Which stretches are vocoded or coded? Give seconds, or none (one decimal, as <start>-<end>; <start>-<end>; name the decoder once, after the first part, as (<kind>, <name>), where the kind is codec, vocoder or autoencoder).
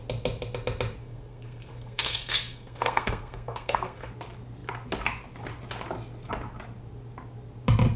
1.0-4.1 (codec, SNAC)